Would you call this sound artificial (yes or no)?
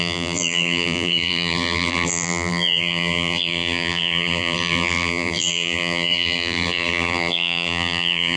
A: yes